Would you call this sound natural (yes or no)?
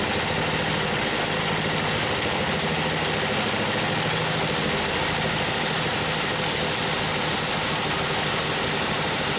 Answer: yes